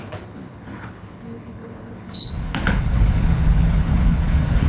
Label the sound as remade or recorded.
remade